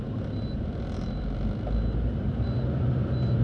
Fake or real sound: real